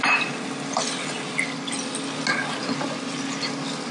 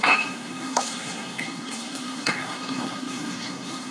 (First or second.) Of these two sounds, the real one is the first